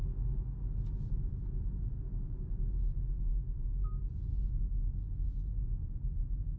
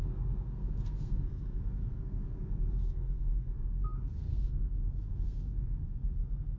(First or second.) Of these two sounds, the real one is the first